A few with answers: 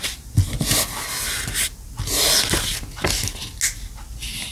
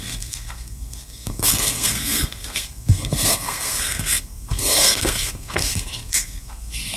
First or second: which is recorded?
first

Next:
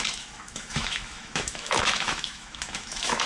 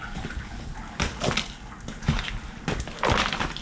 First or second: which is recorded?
second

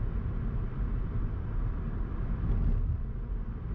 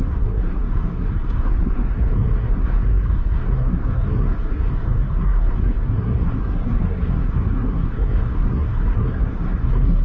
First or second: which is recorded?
first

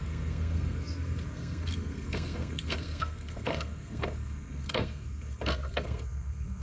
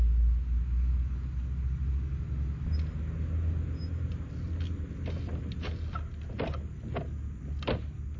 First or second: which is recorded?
second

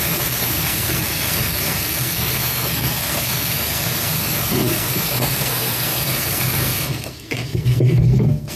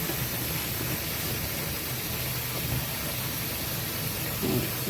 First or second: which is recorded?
second